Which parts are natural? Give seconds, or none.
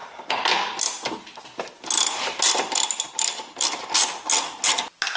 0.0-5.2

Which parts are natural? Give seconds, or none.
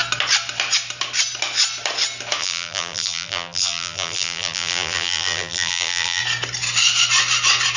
0.0-2.4; 6.2-7.8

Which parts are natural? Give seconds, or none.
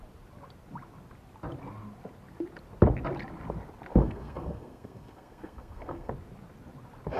0.0-3.9; 6.1-7.2